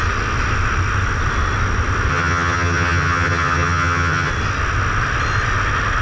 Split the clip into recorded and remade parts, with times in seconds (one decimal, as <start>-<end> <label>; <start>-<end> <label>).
0.0-2.1 recorded; 2.1-4.3 remade; 4.3-6.0 recorded